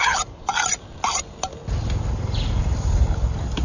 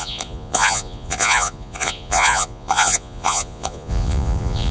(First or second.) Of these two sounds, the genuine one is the first